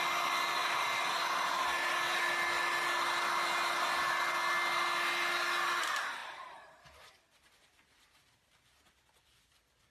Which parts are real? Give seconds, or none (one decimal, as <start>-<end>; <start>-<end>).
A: 0.0-6.2; 7.1-9.9